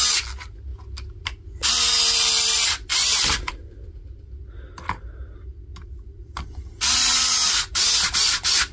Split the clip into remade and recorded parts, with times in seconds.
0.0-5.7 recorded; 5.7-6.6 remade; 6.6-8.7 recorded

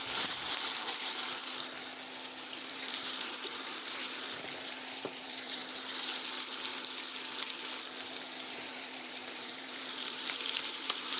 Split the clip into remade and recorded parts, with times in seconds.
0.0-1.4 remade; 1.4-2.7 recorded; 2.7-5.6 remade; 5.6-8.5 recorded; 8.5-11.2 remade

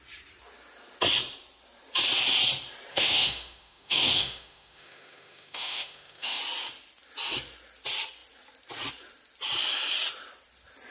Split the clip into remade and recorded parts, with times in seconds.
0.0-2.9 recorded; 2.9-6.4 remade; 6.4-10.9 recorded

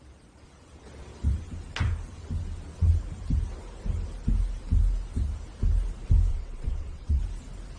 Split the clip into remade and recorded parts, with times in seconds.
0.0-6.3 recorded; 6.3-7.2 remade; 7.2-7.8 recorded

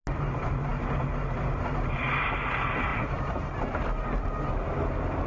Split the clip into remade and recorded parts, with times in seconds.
0.0-5.3 recorded

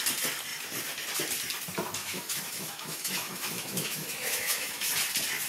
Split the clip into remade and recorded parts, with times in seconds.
0.0-2.0 recorded; 2.0-4.9 remade; 4.9-5.5 recorded

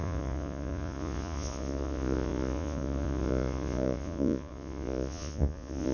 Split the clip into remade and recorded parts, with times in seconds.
0.0-5.9 remade

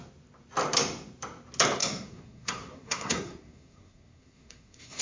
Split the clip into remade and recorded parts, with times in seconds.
0.0-1.8 recorded; 1.8-5.0 remade